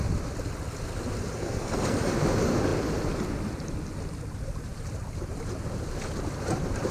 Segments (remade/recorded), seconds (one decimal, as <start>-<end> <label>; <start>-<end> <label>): 0.0-1.4 recorded; 1.4-2.2 remade; 2.2-6.9 recorded